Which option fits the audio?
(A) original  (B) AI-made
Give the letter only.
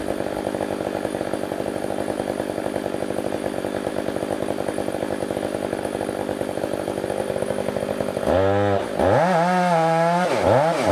A